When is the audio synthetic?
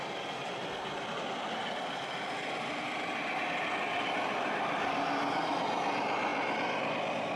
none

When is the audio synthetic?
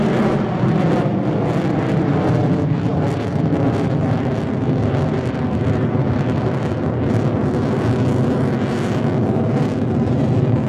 none